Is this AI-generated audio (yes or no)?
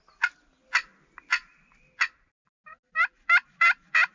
no